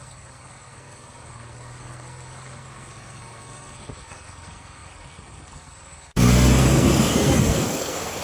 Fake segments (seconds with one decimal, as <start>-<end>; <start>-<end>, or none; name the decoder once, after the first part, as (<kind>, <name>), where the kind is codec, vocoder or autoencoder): 0.0-8.2 (codec, SNAC)